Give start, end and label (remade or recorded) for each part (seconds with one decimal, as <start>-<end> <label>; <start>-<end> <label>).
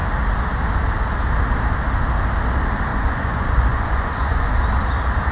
0.0-2.9 recorded; 2.9-4.5 remade; 4.5-5.3 recorded